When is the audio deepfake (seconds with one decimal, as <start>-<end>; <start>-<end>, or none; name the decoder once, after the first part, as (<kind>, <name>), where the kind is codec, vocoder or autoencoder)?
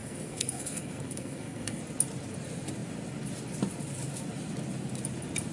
0.0-1.8 (codec, SNAC)